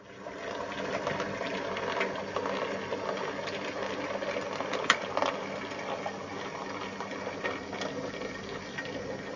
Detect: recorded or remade recorded